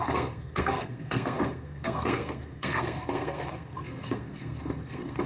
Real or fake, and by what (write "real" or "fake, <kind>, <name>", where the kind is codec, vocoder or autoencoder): fake, codec, SNAC